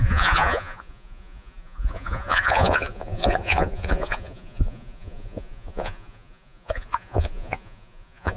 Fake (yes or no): yes